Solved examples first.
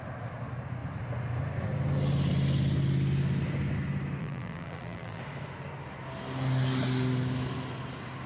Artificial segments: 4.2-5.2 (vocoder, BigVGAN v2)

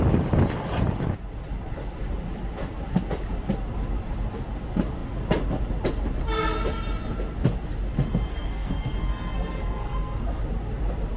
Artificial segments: 8.3-10.4 (codec, SNAC)

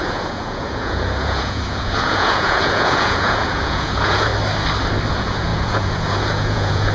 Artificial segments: 0.0-4.3 (vocoder, Vocos); 5.1-6.9